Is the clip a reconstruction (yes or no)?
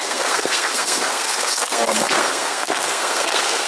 yes